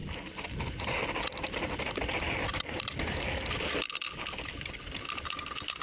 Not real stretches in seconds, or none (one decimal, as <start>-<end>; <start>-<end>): none